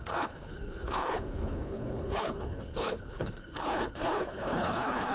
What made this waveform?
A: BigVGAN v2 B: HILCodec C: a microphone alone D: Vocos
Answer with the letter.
B